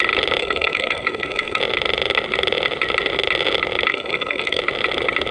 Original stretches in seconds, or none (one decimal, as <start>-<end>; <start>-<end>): 0.0-0.4; 1.6-3.9; 4.6-5.3

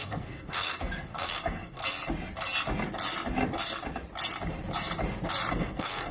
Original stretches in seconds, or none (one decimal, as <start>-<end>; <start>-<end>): 1.8-5.5

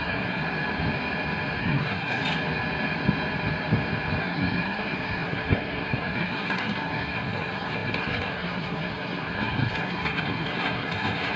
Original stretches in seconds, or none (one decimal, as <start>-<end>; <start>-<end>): 0.4-1.6; 2.2-4.2